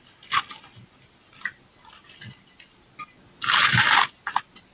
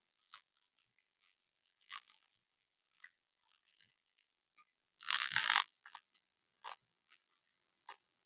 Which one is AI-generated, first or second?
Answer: second